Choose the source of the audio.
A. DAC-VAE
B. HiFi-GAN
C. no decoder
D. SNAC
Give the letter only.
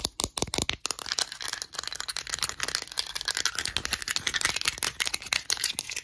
C